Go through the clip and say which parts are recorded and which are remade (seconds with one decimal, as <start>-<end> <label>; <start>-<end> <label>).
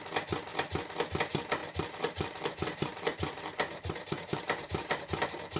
0.0-1.6 recorded; 1.6-5.0 remade; 5.0-5.6 recorded